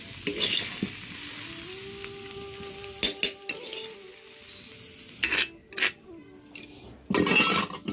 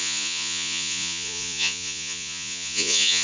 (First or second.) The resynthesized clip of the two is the second